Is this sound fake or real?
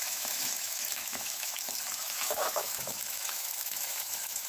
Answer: fake